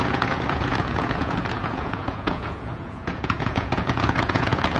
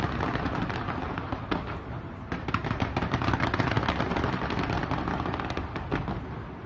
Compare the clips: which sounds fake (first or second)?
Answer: first